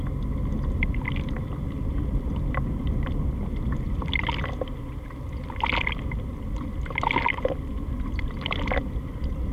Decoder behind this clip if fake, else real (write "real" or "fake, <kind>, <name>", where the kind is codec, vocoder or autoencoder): real